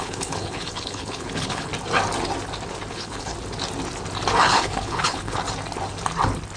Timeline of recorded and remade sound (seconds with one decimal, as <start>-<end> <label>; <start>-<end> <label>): 0.0-1.7 remade; 1.7-2.9 recorded; 2.9-3.3 remade; 3.3-4.4 recorded; 4.4-5.4 remade; 5.4-6.6 recorded